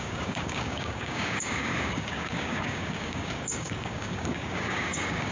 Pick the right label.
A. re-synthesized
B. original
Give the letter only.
A